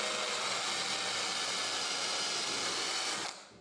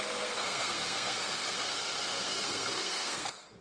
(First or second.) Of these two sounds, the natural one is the first